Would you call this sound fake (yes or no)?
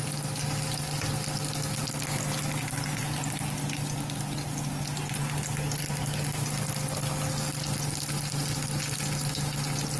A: no